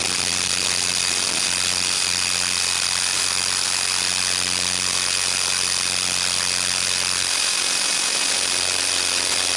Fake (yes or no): no